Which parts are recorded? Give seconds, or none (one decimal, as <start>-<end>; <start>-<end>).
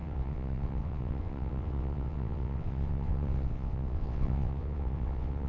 none